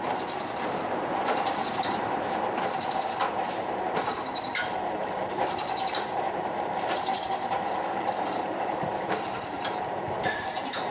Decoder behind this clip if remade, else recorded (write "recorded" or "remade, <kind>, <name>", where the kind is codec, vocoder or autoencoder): remade, vocoder, BigVGAN v2